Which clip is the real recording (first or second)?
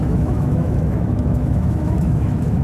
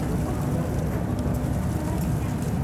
second